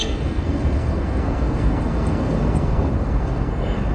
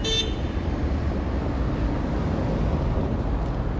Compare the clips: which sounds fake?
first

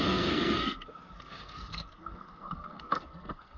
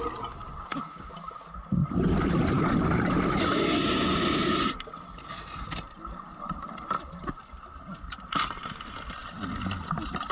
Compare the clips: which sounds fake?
first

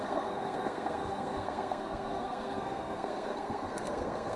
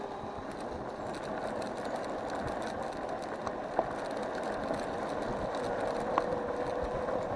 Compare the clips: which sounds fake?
first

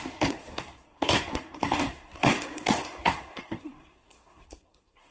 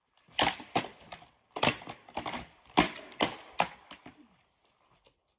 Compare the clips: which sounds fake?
first